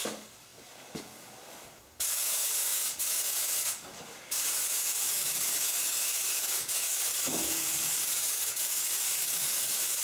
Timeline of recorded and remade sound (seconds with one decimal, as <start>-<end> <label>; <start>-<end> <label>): 0.0-10.0 remade